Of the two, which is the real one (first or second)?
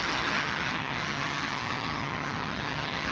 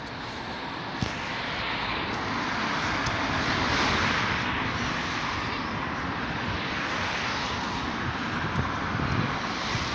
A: second